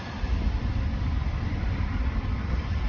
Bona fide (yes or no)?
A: no